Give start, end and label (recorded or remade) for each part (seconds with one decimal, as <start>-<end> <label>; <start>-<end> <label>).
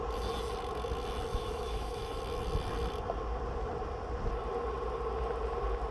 0.0-1.3 recorded; 1.3-2.2 remade; 2.2-5.9 recorded